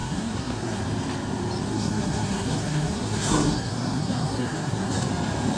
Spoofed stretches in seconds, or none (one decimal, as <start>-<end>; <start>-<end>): 0.0-0.8; 1.7-5.1

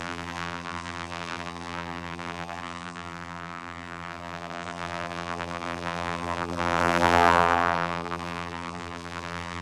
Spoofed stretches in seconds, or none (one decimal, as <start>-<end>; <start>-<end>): 0.0-9.6

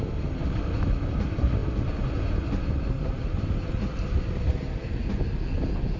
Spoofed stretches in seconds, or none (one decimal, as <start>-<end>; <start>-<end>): none

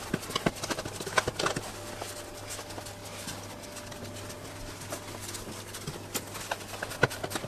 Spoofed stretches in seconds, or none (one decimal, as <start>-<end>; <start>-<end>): none